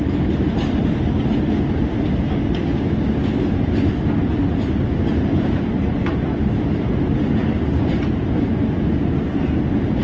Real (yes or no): yes